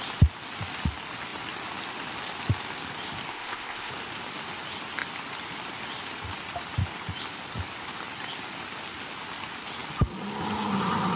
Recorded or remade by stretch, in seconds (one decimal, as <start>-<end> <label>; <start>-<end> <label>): 0.0-3.3 recorded; 3.3-3.9 remade; 3.9-11.2 recorded